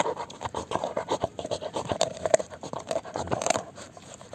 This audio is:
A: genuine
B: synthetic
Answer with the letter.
B